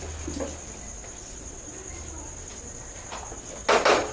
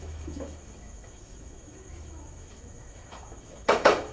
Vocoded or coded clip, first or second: second